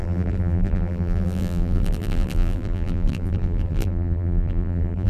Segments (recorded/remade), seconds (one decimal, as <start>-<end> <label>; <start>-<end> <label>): 0.0-5.1 remade